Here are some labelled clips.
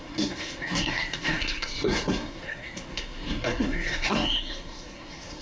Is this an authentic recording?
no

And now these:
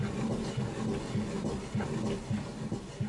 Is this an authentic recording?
yes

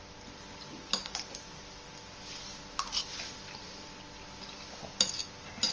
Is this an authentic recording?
yes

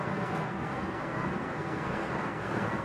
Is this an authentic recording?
no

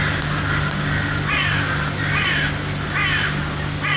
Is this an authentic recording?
yes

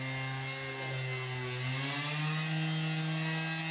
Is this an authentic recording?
yes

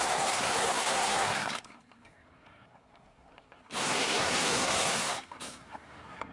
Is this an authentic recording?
no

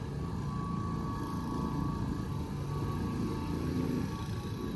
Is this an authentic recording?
yes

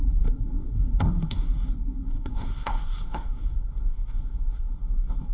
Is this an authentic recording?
no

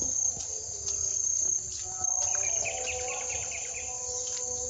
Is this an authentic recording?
yes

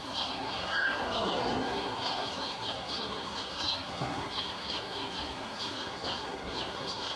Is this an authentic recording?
no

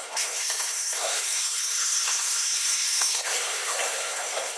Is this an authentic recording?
no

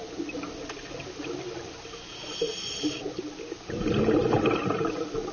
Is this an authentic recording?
yes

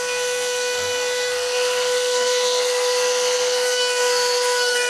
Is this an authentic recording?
no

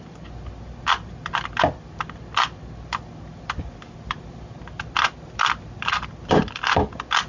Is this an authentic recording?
yes